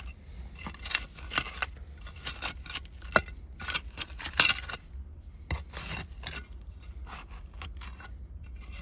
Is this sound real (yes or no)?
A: yes